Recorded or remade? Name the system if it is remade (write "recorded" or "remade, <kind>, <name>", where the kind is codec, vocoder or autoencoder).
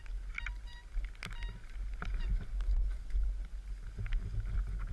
recorded